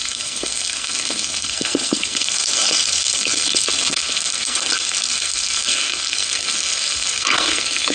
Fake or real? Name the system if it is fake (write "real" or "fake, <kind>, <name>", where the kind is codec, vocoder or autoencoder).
fake, codec, SNAC